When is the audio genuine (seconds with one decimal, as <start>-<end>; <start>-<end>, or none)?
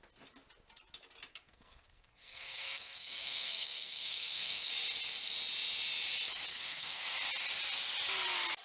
0.0-1.3; 4.7-6.5; 7.0-8.6